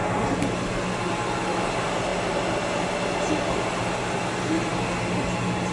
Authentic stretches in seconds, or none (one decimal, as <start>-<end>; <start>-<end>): 0.0-5.7